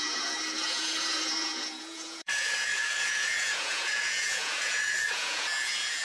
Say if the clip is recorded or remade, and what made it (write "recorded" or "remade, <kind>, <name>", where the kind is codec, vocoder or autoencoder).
remade, vocoder, Vocos